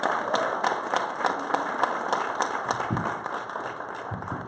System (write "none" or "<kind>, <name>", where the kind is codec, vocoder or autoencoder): none